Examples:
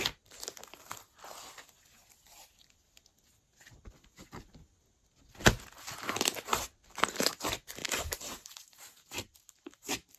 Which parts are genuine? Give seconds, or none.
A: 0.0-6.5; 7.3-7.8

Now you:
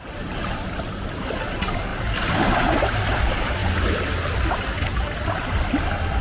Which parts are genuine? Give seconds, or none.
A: 0.0-1.9; 2.8-6.2

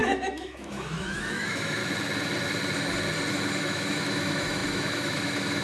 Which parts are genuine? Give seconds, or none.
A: 1.8-3.3

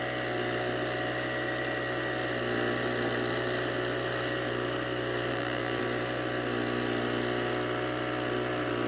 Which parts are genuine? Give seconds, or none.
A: 0.0-5.3; 5.8-8.9

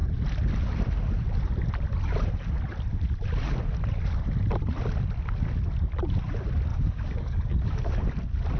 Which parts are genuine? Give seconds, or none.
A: 0.0-6.7; 7.9-8.6

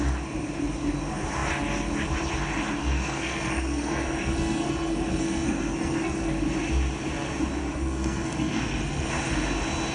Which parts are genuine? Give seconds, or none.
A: 0.0-2.8; 6.3-7.6; 9.1-9.9

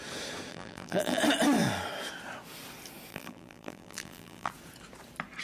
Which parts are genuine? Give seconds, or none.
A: 0.0-0.5; 1.2-3.1; 4.5-5.4

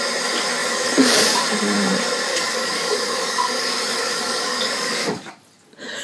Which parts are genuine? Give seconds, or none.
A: 0.0-0.6; 1.3-2.3; 5.3-6.0